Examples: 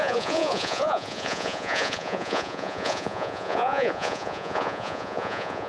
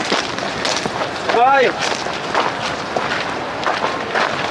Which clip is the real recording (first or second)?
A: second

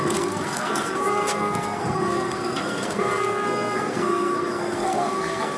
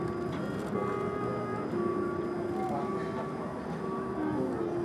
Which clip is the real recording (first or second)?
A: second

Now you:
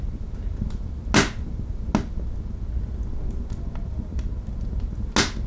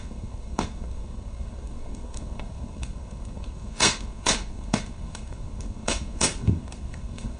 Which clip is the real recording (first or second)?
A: first